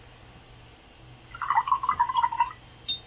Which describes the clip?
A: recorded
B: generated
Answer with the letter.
A